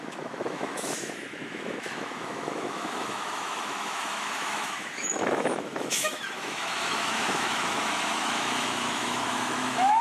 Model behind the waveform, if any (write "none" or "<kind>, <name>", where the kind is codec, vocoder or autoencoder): autoencoder, DAC-VAE